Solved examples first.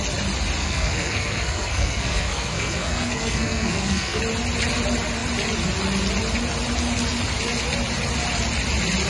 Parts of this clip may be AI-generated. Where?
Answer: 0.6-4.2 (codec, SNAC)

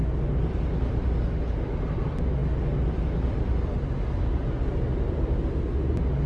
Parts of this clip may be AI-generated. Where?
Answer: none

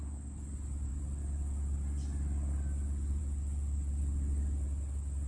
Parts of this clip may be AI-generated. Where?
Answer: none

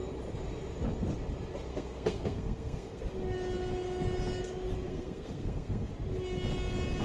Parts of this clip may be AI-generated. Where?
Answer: 1.7-3.0 (codec, SNAC); 4.9-5.9

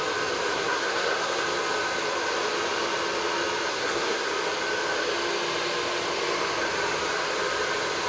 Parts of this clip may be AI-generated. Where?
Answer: 0.5-1.4 (codec, SNAC); 3.7-4.3

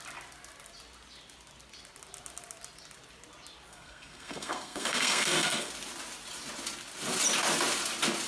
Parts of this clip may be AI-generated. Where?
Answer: 3.7-5.7 (codec, SNAC)

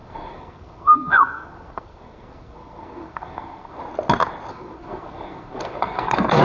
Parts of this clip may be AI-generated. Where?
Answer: 0.0-3.8 (codec, SNAC); 4.5-6.4

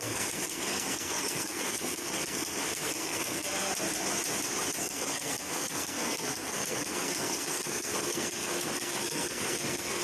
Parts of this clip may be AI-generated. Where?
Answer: 0.0-3.7 (codec, SNAC); 4.8-10.0